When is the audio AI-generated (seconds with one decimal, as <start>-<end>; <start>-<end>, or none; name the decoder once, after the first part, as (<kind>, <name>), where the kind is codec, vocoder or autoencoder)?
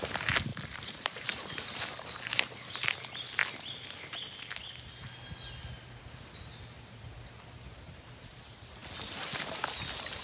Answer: 0.5-2.7 (vocoder, BigVGAN v2)